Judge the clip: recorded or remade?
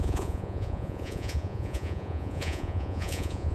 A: remade